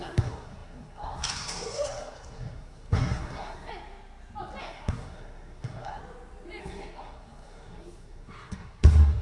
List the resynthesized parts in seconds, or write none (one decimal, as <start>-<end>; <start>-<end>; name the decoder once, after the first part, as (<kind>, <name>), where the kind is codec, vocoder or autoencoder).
0.0-3.7 (codec, SNAC); 4.6-6.0; 6.6-9.2

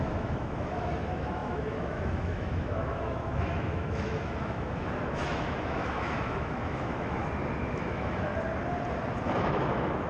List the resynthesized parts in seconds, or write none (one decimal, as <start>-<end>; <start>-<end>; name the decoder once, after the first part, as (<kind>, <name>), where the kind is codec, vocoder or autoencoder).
0.0-7.2 (autoencoder, DAC-VAE); 7.7-8.3; 9.2-10.1

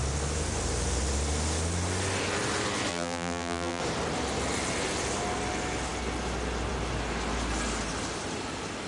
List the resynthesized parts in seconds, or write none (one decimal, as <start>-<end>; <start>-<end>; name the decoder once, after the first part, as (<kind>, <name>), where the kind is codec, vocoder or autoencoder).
2.9-3.8 (vocoder, BigVGAN v2)

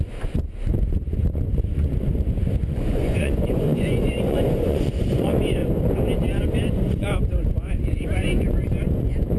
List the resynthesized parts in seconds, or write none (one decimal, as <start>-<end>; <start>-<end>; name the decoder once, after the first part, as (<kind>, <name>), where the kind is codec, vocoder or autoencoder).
0.0-5.6 (vocoder, Vocos); 6.3-9.4

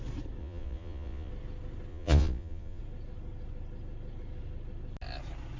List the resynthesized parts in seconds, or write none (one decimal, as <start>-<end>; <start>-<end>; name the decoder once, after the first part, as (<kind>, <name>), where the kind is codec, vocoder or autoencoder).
0.4-1.3 (vocoder, Vocos); 1.9-2.8

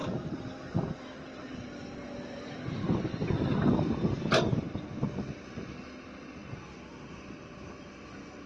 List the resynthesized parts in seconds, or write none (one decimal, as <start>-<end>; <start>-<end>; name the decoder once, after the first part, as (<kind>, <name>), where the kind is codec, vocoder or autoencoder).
none

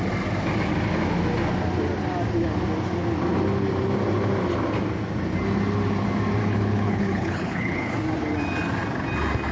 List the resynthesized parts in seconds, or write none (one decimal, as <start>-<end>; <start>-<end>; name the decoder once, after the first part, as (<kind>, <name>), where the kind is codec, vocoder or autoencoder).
6.4-7.9 (codec, HILCodec)